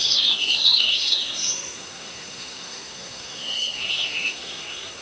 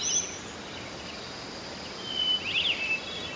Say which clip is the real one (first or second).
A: second